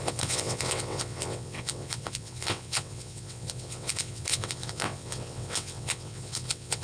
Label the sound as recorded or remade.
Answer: remade